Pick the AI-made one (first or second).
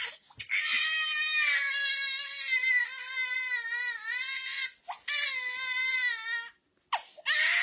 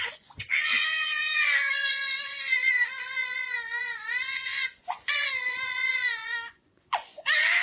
second